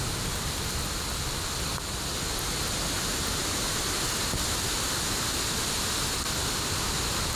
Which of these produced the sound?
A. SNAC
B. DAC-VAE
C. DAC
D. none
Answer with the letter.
D